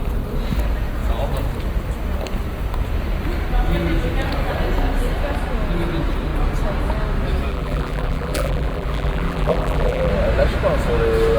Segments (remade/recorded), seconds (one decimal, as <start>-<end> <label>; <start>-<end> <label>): 0.0-7.5 recorded; 7.5-10.1 remade; 10.1-11.4 recorded